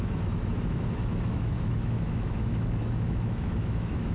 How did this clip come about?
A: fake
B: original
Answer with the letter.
A